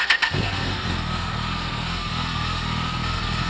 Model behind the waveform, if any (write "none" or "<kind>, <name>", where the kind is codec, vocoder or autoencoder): codec, SNAC